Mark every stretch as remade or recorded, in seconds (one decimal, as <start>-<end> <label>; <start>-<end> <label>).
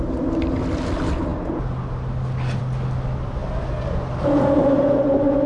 0.0-5.5 recorded